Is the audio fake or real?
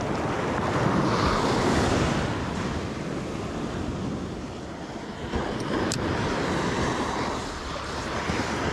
real